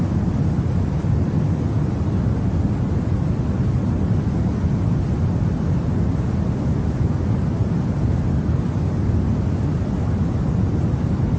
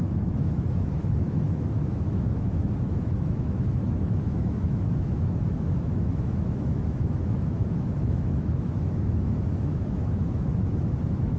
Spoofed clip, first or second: second